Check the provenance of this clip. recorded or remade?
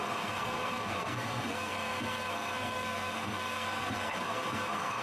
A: remade